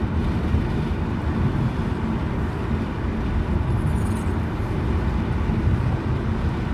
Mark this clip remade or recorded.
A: recorded